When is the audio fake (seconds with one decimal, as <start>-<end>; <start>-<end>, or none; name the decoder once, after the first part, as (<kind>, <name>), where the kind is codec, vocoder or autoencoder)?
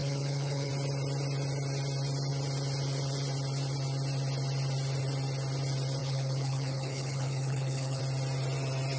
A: 0.0-0.7 (codec, HILCodec); 6.0-8.0